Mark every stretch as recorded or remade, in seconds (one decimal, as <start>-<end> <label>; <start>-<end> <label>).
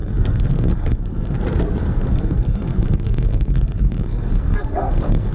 0.0-1.4 remade; 1.4-1.8 recorded; 1.8-5.3 remade